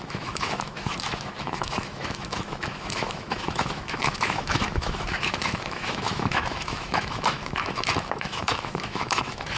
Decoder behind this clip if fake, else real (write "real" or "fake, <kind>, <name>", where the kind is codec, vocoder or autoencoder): fake, autoencoder, DAC-VAE